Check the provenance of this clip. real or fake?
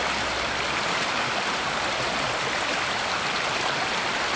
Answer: real